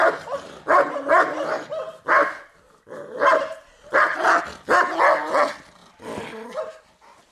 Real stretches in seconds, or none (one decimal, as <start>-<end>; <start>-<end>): 0.0-7.3